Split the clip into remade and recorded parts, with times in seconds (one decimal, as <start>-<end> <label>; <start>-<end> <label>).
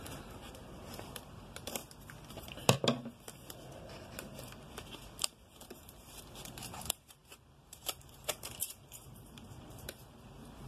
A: 0.0-1.8 remade; 1.8-5.2 recorded; 5.2-10.7 remade